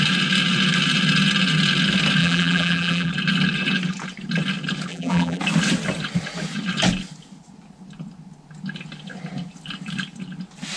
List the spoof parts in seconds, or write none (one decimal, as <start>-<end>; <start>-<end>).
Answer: 2.2-3.1; 4.9-5.4